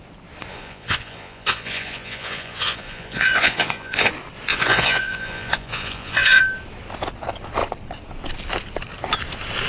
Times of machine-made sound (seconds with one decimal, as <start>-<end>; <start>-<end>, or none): 0.5-4.1; 4.5-6.4